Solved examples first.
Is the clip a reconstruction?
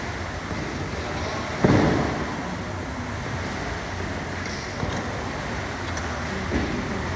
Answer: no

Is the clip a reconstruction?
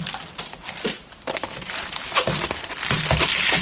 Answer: no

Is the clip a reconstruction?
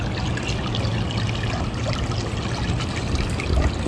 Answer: no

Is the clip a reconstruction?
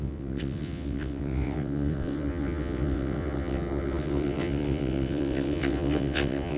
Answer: yes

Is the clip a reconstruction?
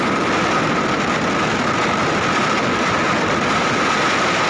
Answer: no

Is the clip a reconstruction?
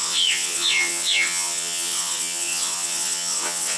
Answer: yes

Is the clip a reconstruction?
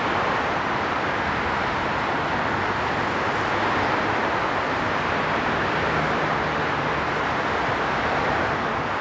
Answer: no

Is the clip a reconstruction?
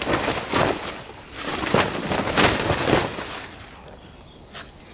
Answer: no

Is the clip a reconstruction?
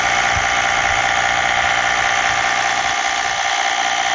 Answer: no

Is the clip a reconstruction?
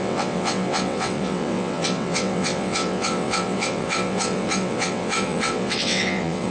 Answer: yes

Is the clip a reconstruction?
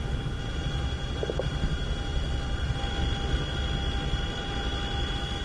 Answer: no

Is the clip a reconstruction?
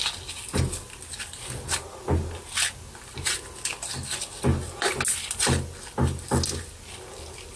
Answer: no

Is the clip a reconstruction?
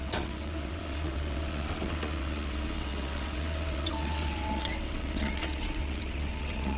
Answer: yes